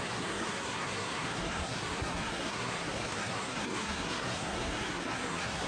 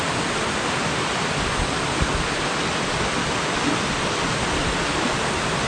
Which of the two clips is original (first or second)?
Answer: second